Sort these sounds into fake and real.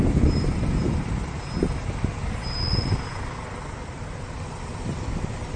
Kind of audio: real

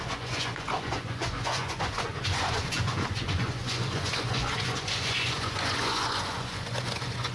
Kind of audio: fake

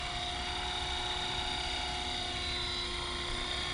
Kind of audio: real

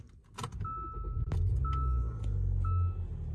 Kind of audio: real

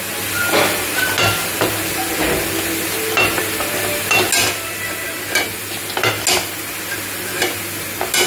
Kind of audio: real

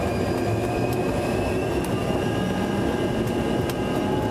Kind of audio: real